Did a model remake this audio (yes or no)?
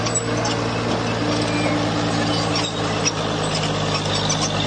no